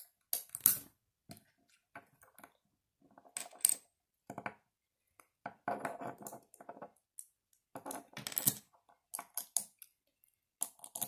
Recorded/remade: recorded